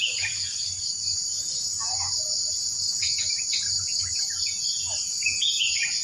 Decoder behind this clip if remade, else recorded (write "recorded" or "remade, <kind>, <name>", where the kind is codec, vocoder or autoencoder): remade, vocoder, Vocos